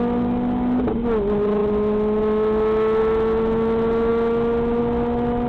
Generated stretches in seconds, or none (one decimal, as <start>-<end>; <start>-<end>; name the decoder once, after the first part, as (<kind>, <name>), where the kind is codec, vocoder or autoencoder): none